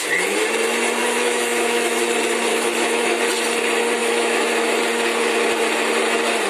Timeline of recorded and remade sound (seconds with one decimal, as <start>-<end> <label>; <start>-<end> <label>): 0.0-1.0 recorded; 1.0-2.0 remade; 2.0-2.5 recorded; 2.5-3.2 remade; 3.2-4.0 recorded; 4.0-4.5 remade; 4.5-6.5 recorded